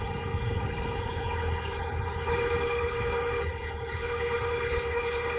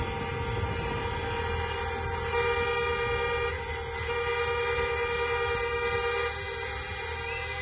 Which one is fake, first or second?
first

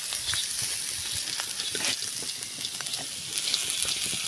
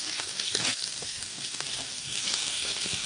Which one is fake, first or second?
second